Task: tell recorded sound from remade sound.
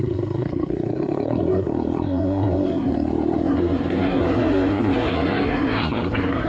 remade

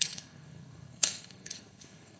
remade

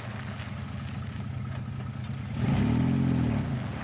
recorded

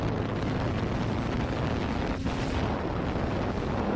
recorded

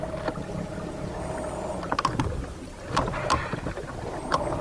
recorded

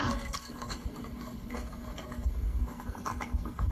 remade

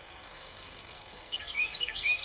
remade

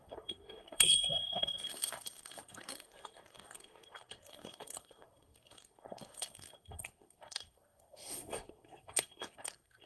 remade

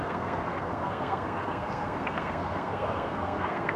remade